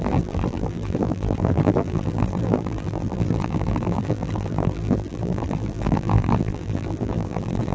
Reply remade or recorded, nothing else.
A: remade